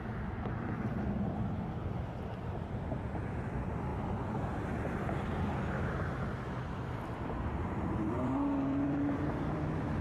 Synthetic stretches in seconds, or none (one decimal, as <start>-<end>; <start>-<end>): 0.0-3.9; 6.9-10.0